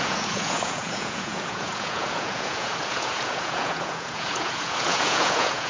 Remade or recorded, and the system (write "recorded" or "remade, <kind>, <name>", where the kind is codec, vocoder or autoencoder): remade, vocoder, Vocos